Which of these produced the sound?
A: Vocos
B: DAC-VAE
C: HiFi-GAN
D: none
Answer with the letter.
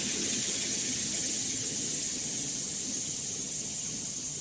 C